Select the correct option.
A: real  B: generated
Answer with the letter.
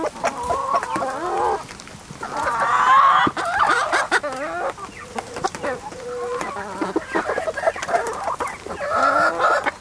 A